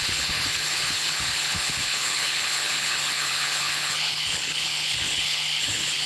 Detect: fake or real fake